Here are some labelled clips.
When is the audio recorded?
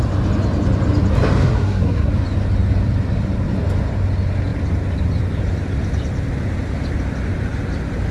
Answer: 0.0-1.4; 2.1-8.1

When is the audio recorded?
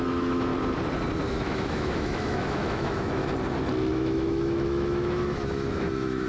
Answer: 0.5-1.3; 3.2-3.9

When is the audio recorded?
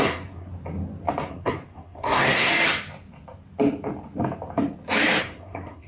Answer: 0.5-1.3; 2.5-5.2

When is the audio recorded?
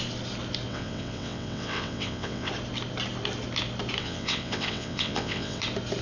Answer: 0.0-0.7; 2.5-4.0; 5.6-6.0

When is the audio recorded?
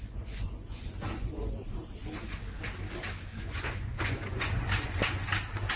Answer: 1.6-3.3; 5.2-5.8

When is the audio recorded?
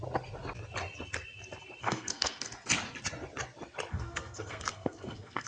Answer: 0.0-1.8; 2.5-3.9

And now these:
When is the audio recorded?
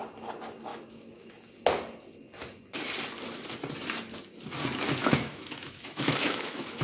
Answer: 0.0-0.7; 1.3-5.0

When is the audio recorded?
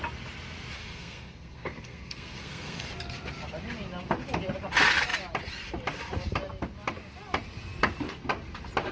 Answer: 0.0-0.8; 2.9-8.9